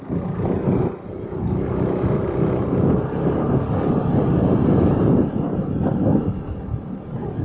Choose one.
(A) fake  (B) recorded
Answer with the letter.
B